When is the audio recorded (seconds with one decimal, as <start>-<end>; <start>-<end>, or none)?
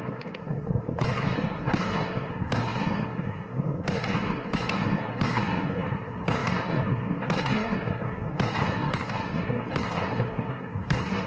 none